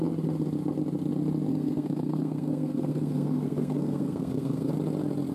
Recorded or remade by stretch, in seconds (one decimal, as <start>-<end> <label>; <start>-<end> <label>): 0.0-1.5 recorded; 1.5-4.7 remade; 4.7-5.3 recorded